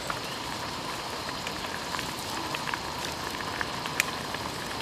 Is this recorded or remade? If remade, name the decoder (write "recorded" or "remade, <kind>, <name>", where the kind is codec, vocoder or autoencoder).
remade, vocoder, BigVGAN v2